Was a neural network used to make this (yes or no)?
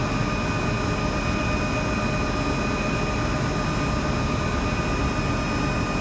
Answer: no